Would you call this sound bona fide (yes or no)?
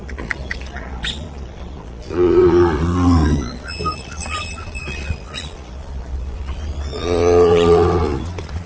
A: no